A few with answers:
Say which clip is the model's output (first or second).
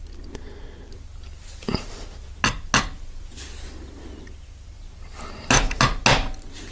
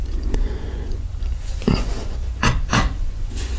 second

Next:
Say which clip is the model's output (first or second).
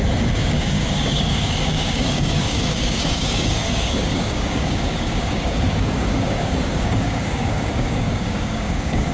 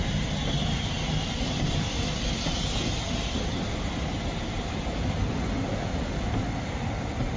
first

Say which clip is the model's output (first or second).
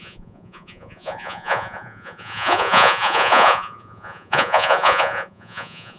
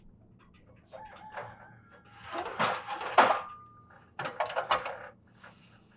first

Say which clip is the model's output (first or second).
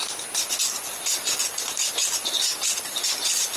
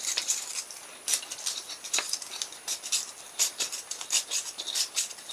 second